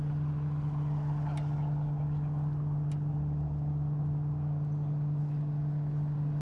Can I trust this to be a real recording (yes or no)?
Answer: yes